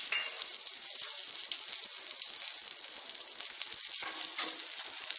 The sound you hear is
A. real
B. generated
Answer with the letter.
A